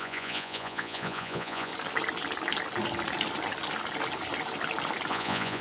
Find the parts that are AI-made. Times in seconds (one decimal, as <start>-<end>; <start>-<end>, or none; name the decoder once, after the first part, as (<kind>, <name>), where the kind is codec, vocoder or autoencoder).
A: 0.0-1.7 (vocoder, Vocos); 5.1-5.6